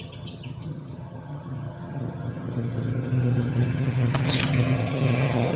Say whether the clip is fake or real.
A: fake